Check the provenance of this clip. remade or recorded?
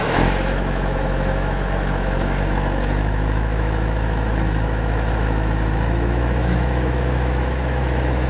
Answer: remade